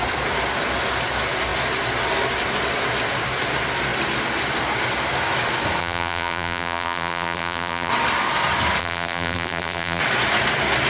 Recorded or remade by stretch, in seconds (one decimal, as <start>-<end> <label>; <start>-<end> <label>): 0.0-5.8 recorded; 5.8-7.9 remade; 7.9-8.8 recorded; 8.8-10.0 remade; 10.0-10.9 recorded